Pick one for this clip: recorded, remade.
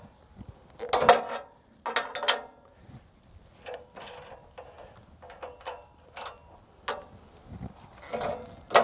recorded